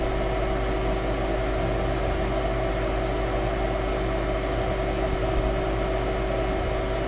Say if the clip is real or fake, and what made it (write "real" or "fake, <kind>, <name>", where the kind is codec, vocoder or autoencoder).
real